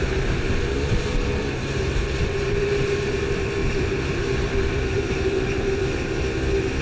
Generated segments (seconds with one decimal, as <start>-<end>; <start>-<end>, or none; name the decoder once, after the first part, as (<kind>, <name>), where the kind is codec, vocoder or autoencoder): 0.0-3.2 (vocoder, BigVGAN v2); 3.6-6.2